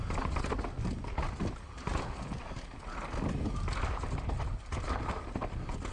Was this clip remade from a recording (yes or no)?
no